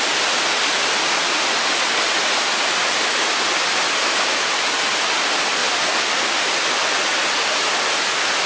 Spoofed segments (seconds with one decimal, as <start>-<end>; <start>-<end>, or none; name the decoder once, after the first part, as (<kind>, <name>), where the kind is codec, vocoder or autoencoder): none